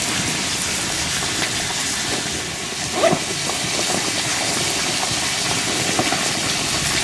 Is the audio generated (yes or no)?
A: no